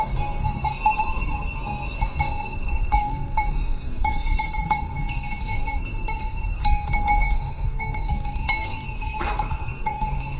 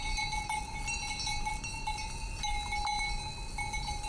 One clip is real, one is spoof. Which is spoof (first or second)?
first